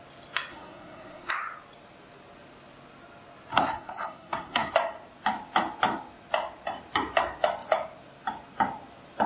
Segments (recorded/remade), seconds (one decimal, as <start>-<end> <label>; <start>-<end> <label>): 0.0-0.5 recorded; 0.5-1.3 remade; 1.3-3.5 recorded; 3.5-4.7 remade; 4.7-9.3 recorded